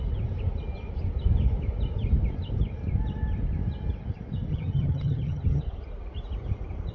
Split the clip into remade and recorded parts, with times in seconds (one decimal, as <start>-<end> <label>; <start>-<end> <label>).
0.0-4.5 recorded; 4.5-5.6 remade; 5.6-6.9 recorded